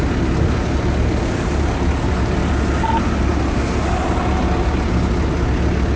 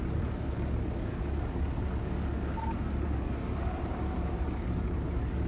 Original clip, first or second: first